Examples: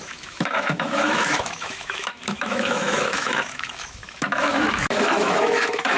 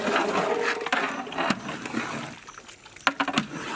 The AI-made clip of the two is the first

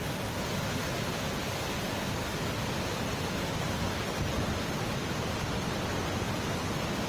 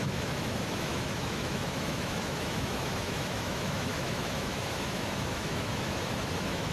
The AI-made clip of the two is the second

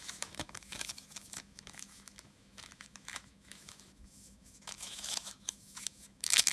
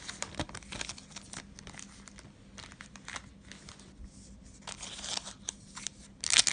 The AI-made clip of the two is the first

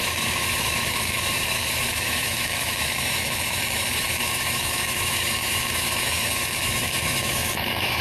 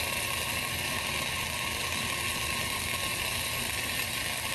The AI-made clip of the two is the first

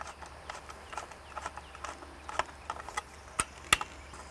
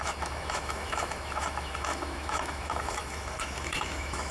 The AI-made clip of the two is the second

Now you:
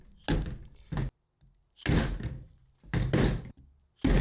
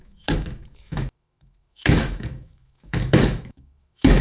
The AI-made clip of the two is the second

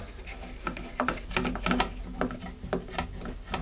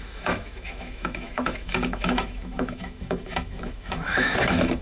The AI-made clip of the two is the second